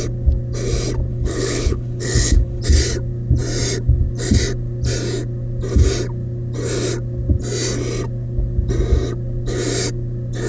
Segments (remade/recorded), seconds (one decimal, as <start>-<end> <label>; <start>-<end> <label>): 0.0-1.1 recorded; 1.1-2.6 remade; 2.6-10.5 recorded